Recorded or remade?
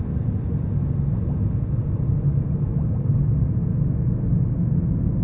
recorded